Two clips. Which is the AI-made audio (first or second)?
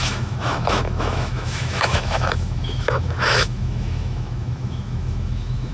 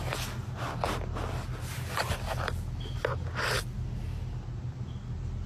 first